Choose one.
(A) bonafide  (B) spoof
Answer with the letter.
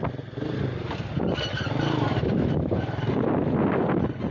A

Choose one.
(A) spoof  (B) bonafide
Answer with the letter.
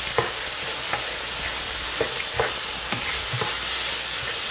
B